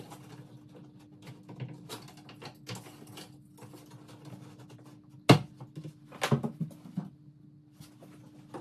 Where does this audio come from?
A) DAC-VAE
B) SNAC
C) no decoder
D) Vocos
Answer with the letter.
C